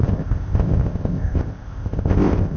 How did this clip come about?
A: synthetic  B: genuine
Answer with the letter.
A